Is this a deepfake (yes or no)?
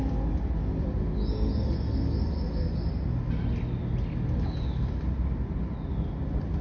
no